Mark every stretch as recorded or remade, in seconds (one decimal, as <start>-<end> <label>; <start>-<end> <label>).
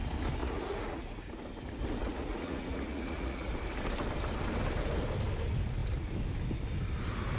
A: 0.0-0.4 recorded; 0.4-1.3 remade; 1.3-2.0 recorded; 2.0-3.5 remade; 3.5-7.4 recorded